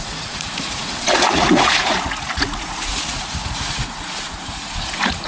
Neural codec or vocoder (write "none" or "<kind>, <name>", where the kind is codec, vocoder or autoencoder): vocoder, Vocos